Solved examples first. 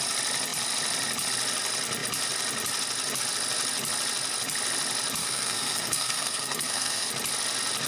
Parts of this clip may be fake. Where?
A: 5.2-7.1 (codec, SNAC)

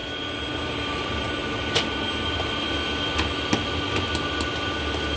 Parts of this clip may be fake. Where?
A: none

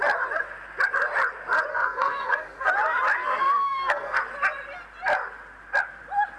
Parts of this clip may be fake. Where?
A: 1.7-2.7 (codec, SNAC); 3.2-4.2

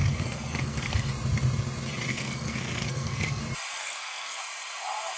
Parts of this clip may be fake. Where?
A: 0.0-1.1 (codec, SNAC); 2.1-3.4; 3.8-4.4